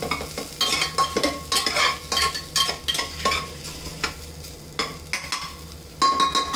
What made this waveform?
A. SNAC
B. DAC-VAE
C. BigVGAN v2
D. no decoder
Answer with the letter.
D